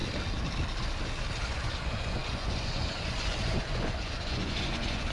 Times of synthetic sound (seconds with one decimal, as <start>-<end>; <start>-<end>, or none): 1.5-5.1